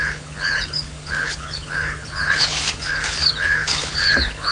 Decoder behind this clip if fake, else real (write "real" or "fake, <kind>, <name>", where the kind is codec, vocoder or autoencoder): fake, codec, HILCodec